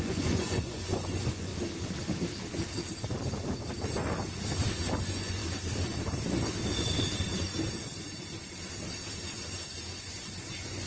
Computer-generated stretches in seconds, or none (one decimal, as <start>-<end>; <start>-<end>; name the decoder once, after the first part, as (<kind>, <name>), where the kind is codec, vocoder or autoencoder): 0.0-1.5 (vocoder, Vocos); 5.0-5.4; 10.0-10.9